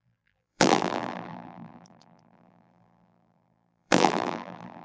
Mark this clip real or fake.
fake